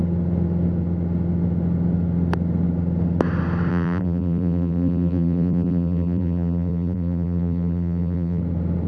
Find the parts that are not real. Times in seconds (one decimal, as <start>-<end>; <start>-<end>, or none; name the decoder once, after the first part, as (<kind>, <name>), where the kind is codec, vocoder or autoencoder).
3.7-8.4 (vocoder, BigVGAN v2)

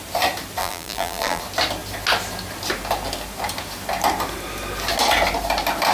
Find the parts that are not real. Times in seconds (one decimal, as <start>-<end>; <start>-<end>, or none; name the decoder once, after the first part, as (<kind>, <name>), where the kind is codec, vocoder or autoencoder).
0.6-1.4 (vocoder, BigVGAN v2)